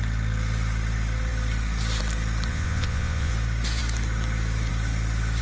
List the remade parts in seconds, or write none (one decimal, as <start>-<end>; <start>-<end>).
2.5-3.3